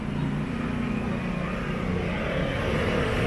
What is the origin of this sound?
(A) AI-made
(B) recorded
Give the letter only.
B